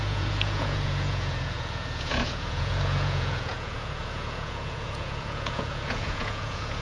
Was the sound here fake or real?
fake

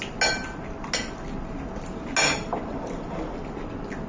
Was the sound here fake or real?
real